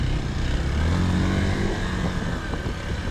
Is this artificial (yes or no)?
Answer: no